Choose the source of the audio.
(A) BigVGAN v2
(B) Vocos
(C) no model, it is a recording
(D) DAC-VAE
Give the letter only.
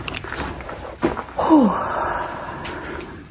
C